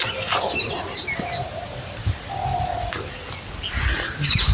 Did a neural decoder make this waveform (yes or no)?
no